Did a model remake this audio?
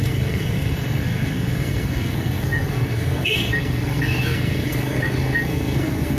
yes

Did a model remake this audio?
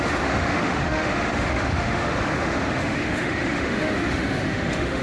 yes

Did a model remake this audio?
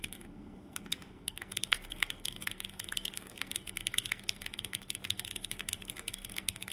yes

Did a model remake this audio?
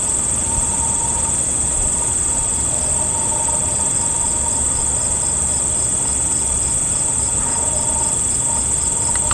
no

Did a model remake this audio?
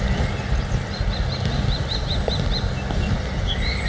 no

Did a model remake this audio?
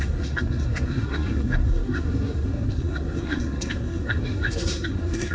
yes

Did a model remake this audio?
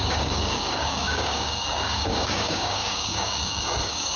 yes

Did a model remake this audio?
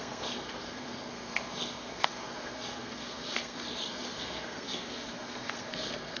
yes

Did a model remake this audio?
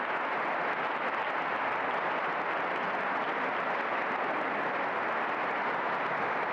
no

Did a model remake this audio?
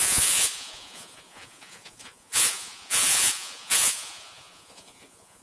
yes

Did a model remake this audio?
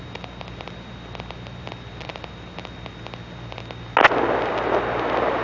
no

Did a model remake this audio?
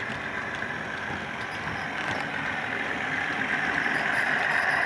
no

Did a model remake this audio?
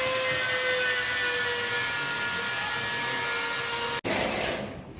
no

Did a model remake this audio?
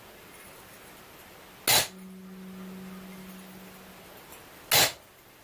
no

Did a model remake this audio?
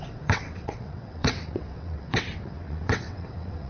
yes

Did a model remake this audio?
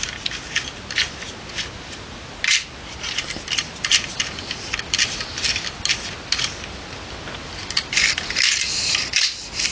no